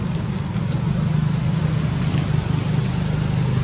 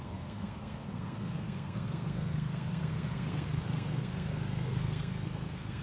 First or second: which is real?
first